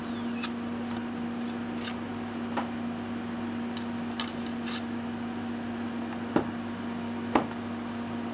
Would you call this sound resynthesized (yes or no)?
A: no